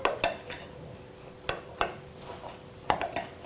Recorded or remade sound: recorded